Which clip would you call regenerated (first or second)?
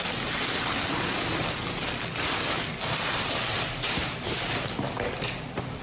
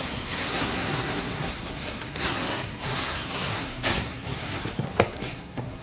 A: second